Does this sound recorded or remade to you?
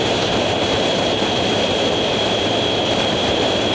remade